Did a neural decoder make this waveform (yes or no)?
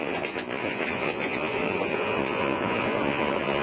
yes